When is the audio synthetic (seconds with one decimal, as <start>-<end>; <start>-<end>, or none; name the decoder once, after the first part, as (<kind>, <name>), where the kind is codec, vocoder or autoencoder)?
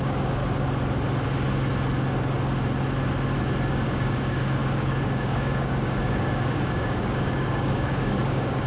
0.0-0.4 (codec, DAC); 3.7-8.7